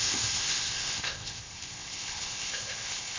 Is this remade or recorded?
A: remade